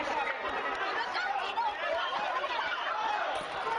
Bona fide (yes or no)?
yes